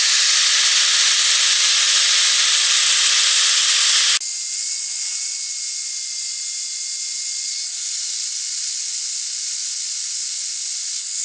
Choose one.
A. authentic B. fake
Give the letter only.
A